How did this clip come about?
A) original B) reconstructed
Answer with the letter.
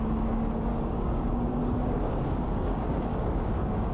B